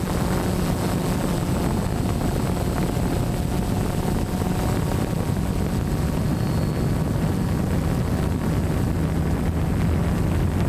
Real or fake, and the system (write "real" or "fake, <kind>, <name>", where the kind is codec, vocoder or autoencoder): real